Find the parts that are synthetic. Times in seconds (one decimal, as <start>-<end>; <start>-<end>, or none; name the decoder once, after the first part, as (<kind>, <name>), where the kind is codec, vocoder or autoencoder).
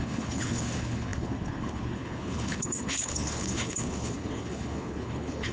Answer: 0.0-5.5 (codec, HILCodec)